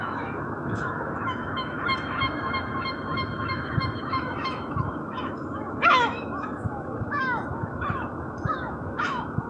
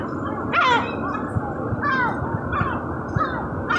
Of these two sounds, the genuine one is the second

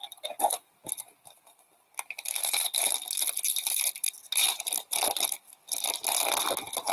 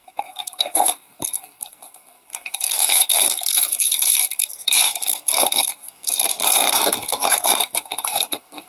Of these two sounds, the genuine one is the first